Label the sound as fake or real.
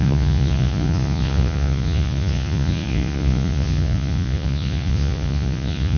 fake